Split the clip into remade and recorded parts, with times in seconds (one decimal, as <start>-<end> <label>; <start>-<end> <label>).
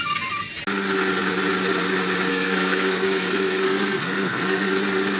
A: 0.0-2.3 recorded; 2.3-4.7 remade; 4.7-5.2 recorded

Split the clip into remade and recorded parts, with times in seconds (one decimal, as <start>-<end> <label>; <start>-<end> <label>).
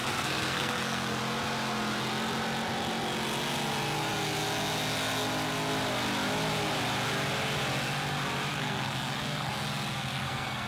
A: 0.0-1.2 remade; 1.2-8.5 recorded; 8.5-9.5 remade; 9.5-10.0 recorded; 10.0-10.7 remade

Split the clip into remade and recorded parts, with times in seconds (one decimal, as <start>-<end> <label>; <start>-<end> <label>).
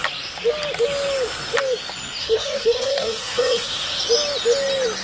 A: 0.0-2.2 recorded; 2.2-4.0 remade; 4.0-5.0 recorded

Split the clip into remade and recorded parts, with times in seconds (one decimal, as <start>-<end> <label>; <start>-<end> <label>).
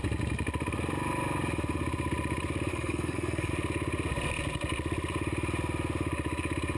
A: 0.0-2.7 recorded; 2.7-3.5 remade; 3.5-6.8 recorded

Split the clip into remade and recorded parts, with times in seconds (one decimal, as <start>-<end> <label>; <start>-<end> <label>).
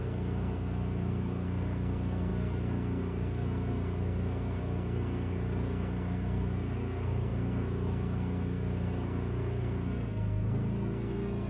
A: 0.0-11.5 remade